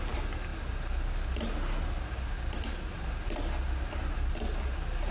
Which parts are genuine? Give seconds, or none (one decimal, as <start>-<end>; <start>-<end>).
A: 0.0-5.1